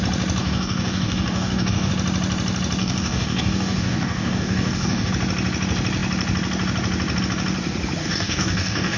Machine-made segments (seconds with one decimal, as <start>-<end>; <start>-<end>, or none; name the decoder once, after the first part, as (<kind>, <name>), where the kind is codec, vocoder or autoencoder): 0.4-1.9 (codec, DAC); 2.8-5.1; 8.0-9.0